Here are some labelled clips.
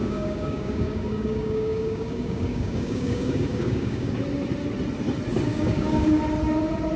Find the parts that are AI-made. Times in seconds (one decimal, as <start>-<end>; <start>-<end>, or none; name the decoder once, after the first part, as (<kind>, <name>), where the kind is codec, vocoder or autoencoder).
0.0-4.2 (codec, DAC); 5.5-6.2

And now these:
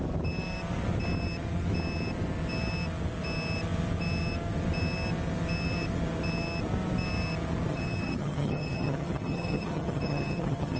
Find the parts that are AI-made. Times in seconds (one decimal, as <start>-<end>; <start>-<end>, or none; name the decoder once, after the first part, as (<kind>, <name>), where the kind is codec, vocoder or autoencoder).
7.7-10.8 (vocoder, HiFi-GAN)

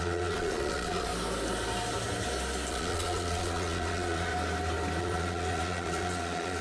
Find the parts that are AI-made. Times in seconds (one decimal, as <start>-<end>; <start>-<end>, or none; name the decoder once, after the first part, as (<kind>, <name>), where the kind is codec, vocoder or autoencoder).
0.0-1.1 (vocoder, Vocos); 2.7-4.3; 5.0-6.6

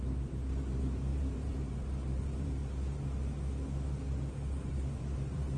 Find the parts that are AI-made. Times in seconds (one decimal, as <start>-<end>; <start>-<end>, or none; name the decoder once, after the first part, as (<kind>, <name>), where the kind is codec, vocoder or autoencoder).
0.0-2.6 (vocoder, BigVGAN v2); 4.7-5.6

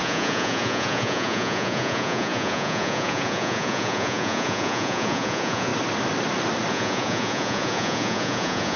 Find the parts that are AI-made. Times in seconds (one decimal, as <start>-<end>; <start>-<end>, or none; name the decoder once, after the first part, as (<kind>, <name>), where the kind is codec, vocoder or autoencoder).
0.0-5.7 (vocoder, Vocos); 6.7-8.8

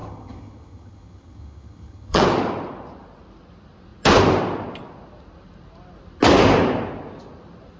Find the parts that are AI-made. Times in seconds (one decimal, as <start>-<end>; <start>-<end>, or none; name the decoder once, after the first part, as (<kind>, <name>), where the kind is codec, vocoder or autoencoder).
0.0-2.2 (vocoder, HiFi-GAN)